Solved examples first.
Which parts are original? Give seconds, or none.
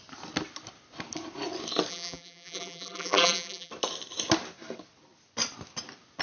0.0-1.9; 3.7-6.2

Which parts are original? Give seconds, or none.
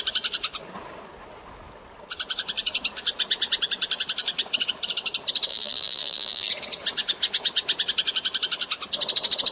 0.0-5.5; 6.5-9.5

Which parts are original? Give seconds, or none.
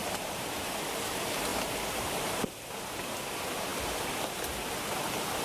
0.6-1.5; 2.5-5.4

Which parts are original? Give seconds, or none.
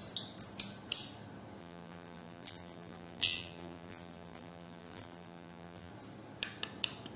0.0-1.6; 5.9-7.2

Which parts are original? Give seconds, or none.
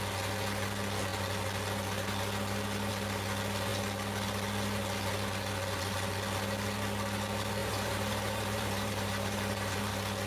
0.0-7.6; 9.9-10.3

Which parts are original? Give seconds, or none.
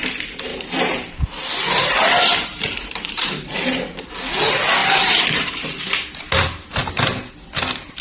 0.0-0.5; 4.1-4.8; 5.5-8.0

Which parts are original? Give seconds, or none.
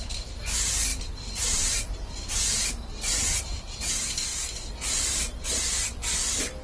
0.0-0.9; 3.9-6.6